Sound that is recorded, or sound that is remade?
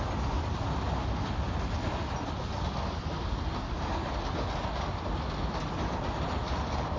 recorded